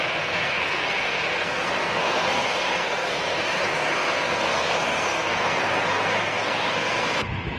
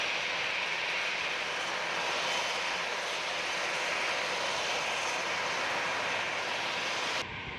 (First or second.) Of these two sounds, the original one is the second